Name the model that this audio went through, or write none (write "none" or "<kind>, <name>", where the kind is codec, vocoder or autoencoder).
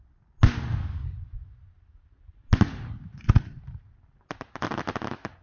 none